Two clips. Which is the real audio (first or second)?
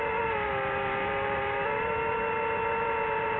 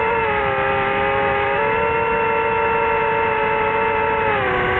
second